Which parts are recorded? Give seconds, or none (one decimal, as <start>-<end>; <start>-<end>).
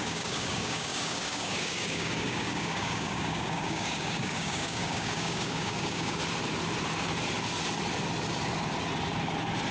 6.2-9.7